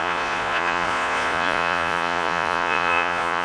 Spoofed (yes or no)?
yes